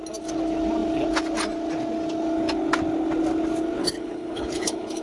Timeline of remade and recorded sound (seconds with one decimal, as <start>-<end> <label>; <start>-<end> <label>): 0.0-3.8 recorded; 3.8-5.0 remade